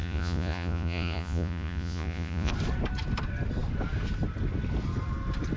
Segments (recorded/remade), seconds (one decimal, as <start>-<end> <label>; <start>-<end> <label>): 0.0-2.5 remade; 2.5-5.6 recorded